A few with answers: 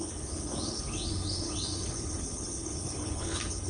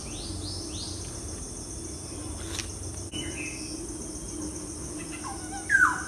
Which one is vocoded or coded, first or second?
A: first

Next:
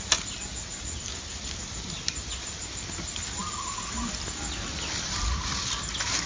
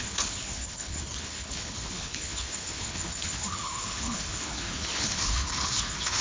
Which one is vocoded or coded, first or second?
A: second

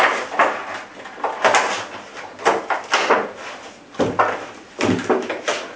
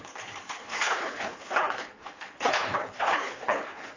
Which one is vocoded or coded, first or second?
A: second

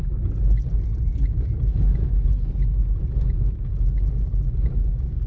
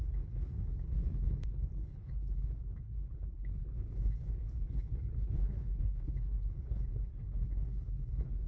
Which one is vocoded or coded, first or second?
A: second